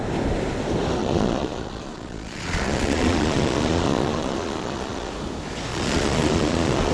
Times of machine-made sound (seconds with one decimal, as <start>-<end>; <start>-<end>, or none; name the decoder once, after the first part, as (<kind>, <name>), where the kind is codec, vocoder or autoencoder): 1.0-5.1 (vocoder, Vocos); 5.7-6.9